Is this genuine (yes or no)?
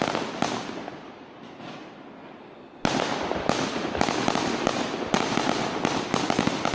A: yes